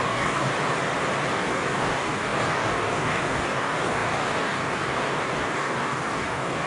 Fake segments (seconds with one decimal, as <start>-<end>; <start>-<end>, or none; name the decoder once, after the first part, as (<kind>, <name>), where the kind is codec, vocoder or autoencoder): 0.0-0.5 (codec, DAC); 1.3-6.7